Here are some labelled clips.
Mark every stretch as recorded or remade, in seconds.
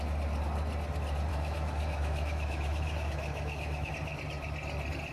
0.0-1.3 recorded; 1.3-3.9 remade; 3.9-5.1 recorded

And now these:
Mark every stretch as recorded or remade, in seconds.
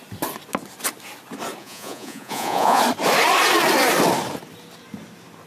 0.0-1.6 recorded; 1.6-2.8 remade; 2.8-5.5 recorded